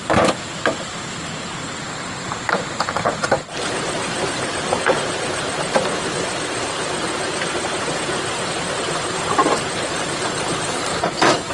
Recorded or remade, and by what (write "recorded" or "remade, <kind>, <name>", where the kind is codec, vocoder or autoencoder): recorded